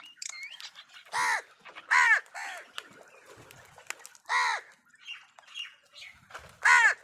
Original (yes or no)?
yes